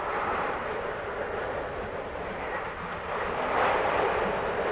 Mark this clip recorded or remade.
recorded